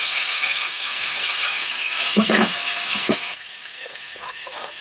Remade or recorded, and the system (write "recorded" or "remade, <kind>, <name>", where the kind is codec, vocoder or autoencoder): remade, codec, SNAC